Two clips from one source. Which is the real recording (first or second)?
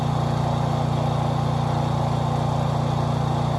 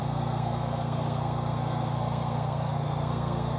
first